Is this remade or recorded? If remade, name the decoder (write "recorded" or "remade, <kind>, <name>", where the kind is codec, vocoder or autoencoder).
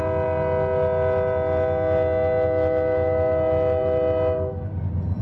recorded